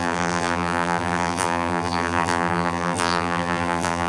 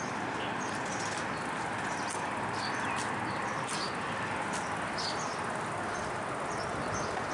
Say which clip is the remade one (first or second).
first